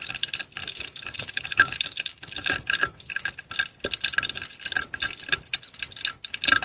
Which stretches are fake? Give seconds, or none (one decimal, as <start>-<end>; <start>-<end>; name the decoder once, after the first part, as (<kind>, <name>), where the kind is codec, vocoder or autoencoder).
0.6-3.3 (autoencoder, DAC-VAE)